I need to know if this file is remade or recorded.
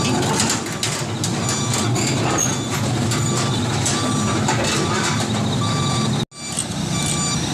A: recorded